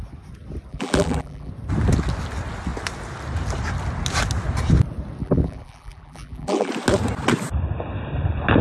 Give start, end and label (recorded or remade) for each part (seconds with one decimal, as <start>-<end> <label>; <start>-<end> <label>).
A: 0.0-0.7 recorded; 0.7-1.5 remade; 1.5-5.2 recorded; 5.2-6.7 remade; 6.7-8.6 recorded